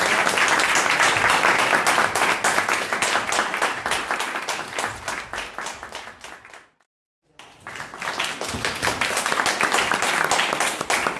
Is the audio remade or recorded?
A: recorded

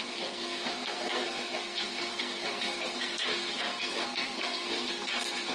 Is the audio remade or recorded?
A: remade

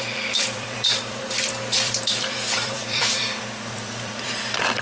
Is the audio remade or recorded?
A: remade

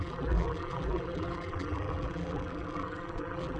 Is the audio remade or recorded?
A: remade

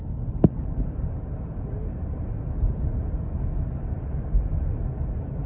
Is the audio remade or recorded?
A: recorded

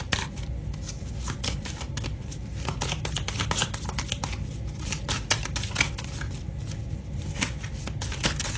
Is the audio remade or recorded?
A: recorded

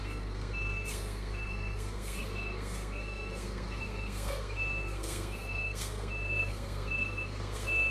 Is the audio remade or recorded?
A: remade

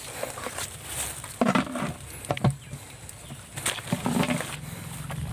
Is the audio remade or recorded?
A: recorded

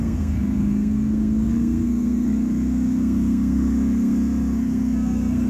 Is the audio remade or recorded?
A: remade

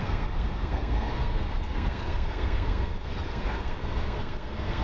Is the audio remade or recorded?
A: remade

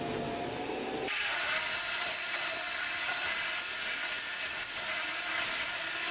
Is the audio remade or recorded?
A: recorded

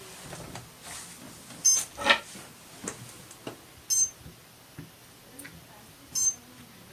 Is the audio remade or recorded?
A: recorded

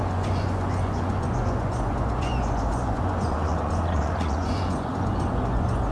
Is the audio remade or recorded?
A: remade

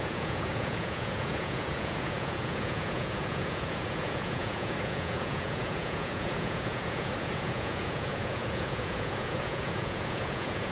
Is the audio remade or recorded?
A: remade